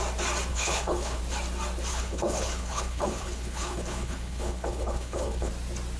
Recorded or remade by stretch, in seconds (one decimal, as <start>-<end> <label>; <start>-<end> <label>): 0.0-0.5 recorded; 0.5-1.2 remade; 1.2-1.9 recorded; 1.9-5.5 remade; 5.5-6.0 recorded